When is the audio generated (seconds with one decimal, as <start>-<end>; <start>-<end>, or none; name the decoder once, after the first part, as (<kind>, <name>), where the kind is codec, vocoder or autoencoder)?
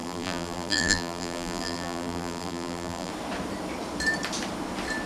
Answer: 0.0-3.1 (vocoder, BigVGAN v2)